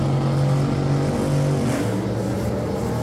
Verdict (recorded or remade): recorded